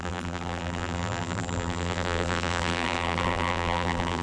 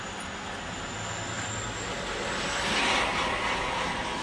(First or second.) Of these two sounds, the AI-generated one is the first